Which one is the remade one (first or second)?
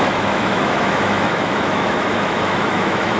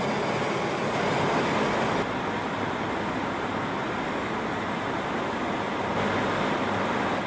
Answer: first